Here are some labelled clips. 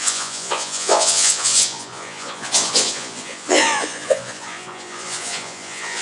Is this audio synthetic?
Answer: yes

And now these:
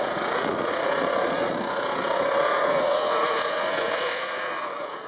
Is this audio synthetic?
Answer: yes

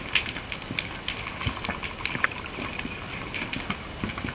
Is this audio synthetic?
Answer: no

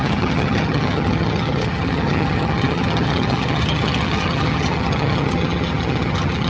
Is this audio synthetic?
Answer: yes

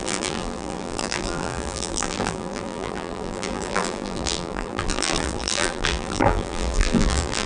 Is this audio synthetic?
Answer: yes